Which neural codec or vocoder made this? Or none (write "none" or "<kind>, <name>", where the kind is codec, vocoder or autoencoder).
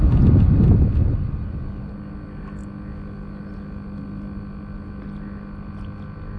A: none